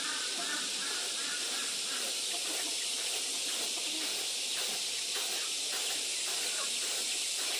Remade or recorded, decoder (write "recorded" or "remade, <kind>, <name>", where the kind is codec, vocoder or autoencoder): recorded